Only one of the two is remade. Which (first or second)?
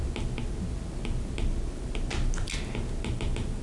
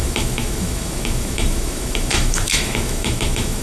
second